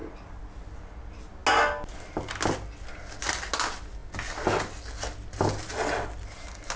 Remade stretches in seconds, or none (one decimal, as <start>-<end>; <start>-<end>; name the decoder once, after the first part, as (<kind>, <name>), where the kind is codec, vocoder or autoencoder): none